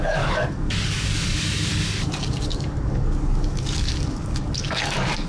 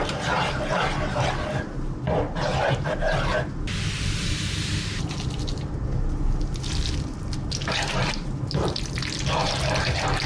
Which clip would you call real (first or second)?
second